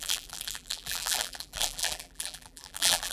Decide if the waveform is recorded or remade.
remade